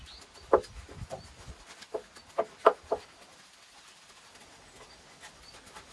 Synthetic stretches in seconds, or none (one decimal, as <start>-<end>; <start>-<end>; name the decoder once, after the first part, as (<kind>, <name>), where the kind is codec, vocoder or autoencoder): none

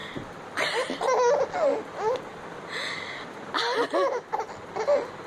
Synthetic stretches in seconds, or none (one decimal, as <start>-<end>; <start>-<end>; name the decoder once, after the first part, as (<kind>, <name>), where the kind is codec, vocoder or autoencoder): none

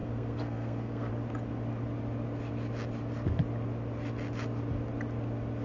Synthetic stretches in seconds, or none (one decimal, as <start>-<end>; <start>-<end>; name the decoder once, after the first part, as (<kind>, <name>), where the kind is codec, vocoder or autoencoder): 0.0-1.1 (codec, SNAC)

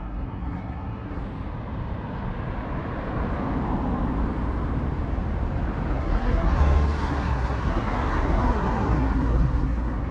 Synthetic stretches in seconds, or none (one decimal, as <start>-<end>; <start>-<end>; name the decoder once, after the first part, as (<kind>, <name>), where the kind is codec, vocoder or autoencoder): 0.0-1.2 (codec, SNAC); 5.9-10.1

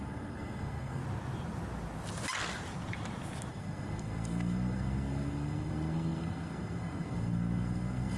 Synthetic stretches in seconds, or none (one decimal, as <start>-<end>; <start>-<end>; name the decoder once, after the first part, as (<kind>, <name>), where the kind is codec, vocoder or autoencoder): 0.0-1.0 (codec, SNAC); 3.5-8.2

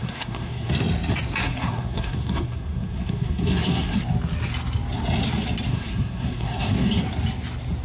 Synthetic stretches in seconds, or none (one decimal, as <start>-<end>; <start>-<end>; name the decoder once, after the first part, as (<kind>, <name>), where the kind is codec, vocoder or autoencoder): 0.0-0.7 (codec, SNAC); 1.4-4.0; 5.7-7.0

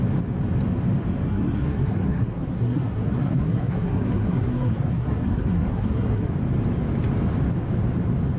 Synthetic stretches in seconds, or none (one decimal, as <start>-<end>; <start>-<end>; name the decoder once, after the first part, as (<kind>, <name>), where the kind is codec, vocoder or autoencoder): 1.3-6.3 (codec, SNAC)

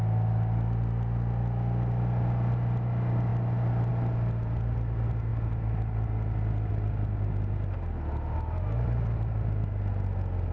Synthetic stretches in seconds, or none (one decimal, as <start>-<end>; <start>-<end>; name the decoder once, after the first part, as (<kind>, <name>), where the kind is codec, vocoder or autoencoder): none